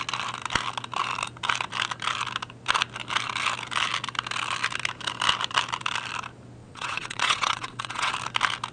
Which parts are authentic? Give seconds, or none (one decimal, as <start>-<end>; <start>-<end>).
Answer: 0.0-6.6; 8.1-8.7